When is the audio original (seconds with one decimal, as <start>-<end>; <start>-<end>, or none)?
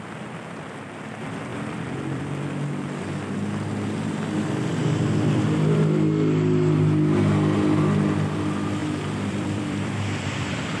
0.0-1.5; 2.2-8.8